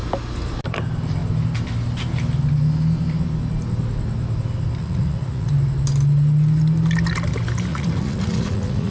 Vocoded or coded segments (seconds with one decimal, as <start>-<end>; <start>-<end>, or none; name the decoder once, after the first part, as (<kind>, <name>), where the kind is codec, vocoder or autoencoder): 4.8-5.5 (vocoder, Vocos); 7.7-8.9